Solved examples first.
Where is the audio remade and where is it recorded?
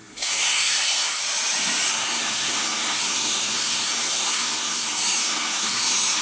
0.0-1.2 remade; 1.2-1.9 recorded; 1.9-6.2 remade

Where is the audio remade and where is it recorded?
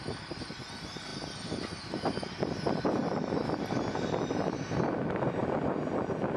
0.0-5.4 recorded; 5.4-6.0 remade; 6.0-6.4 recorded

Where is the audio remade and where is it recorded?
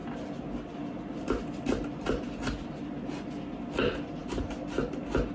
0.0-5.3 recorded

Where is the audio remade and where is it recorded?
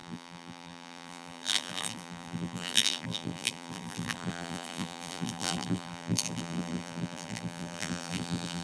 0.0-8.6 remade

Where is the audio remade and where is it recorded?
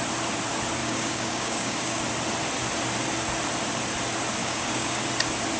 0.0-0.8 recorded; 0.8-2.0 remade; 2.0-4.4 recorded; 4.4-5.0 remade; 5.0-5.6 recorded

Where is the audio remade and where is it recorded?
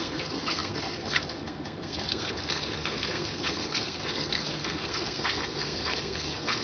0.0-6.6 remade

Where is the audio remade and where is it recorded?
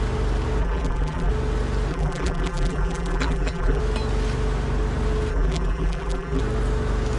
0.0-0.6 recorded; 0.6-1.3 remade; 1.3-1.9 recorded; 1.9-3.8 remade; 3.8-5.3 recorded; 5.3-6.4 remade; 6.4-7.2 recorded